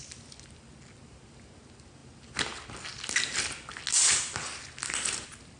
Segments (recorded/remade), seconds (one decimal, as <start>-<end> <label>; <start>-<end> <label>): 0.0-5.6 recorded